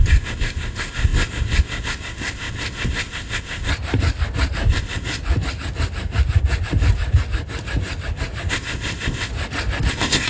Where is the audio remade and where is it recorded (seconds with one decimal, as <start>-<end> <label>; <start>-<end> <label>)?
0.0-3.7 remade; 3.7-4.7 recorded; 4.7-5.2 remade; 5.2-8.5 recorded; 8.5-9.3 remade; 9.3-9.9 recorded; 9.9-10.3 remade